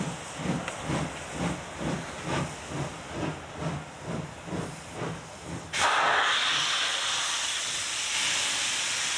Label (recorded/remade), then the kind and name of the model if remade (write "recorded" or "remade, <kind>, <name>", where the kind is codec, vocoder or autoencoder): recorded